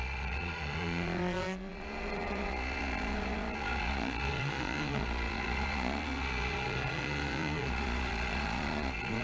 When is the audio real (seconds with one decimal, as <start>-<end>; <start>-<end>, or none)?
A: none